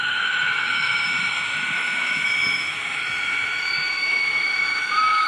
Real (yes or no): no